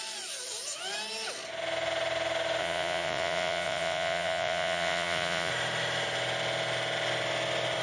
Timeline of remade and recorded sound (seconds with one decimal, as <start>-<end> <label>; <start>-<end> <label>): 0.0-2.6 recorded; 2.6-5.5 remade; 5.5-7.8 recorded